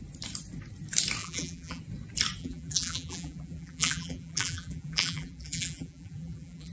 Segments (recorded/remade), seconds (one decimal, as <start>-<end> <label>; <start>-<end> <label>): 0.0-1.2 recorded; 1.2-1.8 remade; 1.8-2.4 recorded; 2.4-6.7 remade